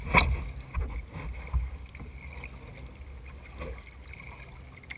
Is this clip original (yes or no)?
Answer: yes